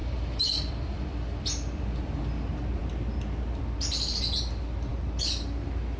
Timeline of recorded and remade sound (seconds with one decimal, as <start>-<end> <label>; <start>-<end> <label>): 0.0-2.2 remade; 2.2-6.0 recorded